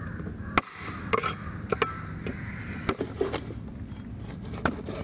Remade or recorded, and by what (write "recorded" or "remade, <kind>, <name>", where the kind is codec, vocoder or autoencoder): recorded